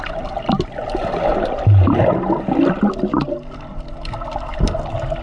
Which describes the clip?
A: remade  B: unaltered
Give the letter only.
B